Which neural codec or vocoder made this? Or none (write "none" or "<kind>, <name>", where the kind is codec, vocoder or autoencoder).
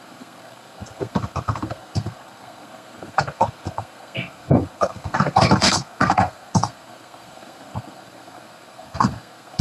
codec, SNAC